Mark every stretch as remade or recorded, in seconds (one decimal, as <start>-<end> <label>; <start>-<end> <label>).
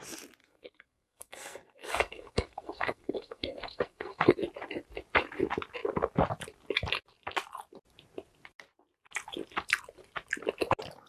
0.0-0.4 recorded; 0.4-4.3 remade; 4.3-11.1 recorded